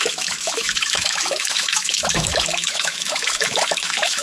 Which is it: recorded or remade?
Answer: remade